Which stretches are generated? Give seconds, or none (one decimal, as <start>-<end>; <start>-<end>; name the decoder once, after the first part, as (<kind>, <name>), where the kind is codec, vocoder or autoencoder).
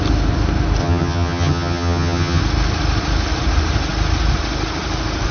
0.8-2.4 (vocoder, HiFi-GAN)